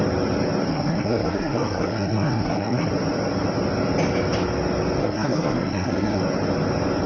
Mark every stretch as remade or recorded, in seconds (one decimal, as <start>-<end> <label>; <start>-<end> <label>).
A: 0.0-0.7 recorded; 0.7-2.9 remade; 2.9-5.0 recorded; 5.0-6.2 remade; 6.2-7.1 recorded